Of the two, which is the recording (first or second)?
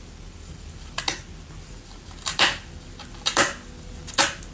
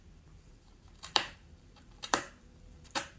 first